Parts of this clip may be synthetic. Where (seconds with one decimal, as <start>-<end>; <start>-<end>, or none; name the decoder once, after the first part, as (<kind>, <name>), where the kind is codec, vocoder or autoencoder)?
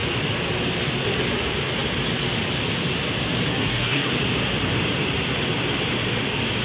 3.5-4.1 (codec, SNAC)